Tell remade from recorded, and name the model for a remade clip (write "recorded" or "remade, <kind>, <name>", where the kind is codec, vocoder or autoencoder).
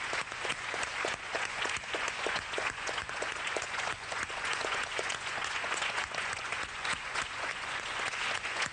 remade, vocoder, Vocos